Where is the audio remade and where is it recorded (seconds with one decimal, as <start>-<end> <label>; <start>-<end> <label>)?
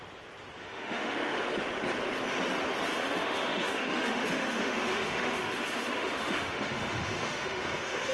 0.0-0.6 recorded; 0.6-1.6 remade; 1.6-2.9 recorded; 2.9-8.1 remade